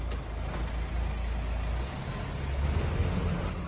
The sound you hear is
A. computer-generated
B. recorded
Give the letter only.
B